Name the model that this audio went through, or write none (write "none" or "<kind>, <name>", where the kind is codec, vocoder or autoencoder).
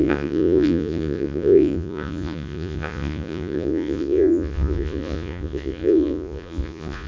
vocoder, Vocos